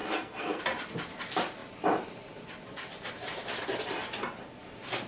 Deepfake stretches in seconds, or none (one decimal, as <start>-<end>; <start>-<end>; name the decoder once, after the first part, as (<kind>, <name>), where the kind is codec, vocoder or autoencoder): 0.0-0.6 (codec, SNAC)